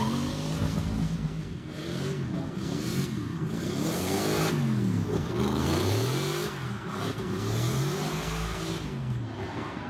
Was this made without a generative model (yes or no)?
no